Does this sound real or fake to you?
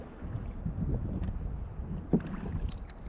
real